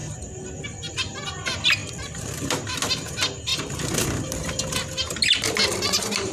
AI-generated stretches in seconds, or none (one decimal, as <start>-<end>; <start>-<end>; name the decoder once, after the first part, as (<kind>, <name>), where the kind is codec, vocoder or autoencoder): 0.0-0.6 (vocoder, BigVGAN v2); 1.8-2.6; 3.5-4.3